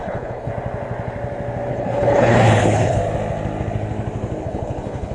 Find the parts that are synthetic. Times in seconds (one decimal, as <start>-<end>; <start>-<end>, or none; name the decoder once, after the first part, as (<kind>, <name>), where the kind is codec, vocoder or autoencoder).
0.0-0.5 (codec, HILCodec); 1.7-3.0; 4.4-5.1